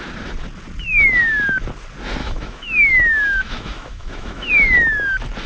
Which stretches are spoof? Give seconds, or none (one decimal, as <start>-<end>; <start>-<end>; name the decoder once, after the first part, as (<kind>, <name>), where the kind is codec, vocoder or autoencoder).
2.2-4.5 (autoencoder, DAC-VAE)

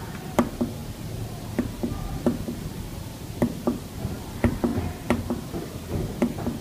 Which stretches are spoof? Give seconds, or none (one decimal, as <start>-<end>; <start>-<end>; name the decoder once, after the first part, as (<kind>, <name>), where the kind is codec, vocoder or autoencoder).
none

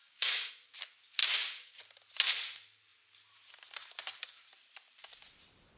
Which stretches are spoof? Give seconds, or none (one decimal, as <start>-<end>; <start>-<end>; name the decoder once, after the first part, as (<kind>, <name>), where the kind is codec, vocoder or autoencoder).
0.0-0.5 (codec, DAC); 1.2-1.8

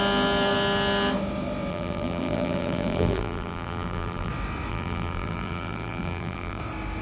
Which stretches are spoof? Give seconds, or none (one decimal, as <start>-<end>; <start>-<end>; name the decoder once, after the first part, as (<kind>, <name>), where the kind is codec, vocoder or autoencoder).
1.7-4.3 (vocoder, BigVGAN v2); 4.7-6.6

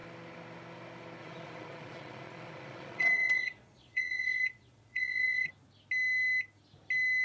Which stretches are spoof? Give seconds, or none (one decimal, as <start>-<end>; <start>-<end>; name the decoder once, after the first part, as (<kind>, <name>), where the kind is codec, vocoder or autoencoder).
1.2-5.5 (vocoder, Vocos)

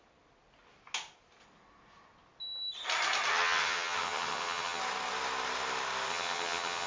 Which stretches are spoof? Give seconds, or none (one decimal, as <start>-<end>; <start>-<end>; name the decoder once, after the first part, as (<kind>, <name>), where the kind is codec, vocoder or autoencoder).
3.3-4.8 (vocoder, HiFi-GAN); 6.1-6.9